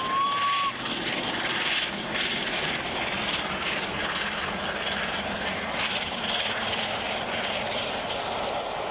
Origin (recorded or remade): recorded